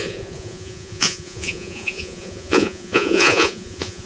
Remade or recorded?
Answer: remade